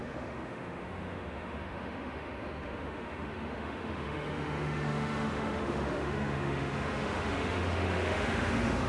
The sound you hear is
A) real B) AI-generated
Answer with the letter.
B